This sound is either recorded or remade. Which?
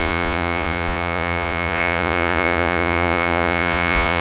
remade